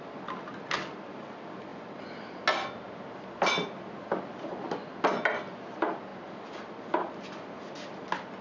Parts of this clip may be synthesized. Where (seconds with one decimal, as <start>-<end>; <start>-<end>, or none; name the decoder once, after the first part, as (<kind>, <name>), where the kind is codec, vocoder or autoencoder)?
none